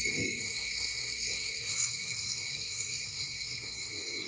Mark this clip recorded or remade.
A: remade